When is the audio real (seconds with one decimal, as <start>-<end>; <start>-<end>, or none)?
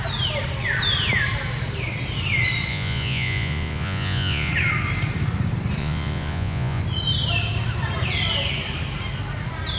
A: 0.0-2.7; 4.5-5.8; 6.8-9.8